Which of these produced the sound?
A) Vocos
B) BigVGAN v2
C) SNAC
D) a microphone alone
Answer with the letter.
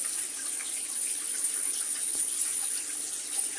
B